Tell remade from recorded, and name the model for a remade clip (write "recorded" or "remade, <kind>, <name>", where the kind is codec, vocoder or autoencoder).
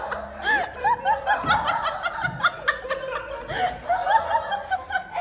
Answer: recorded